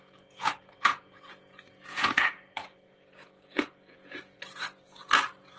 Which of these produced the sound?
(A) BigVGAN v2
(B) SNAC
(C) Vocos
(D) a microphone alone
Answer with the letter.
C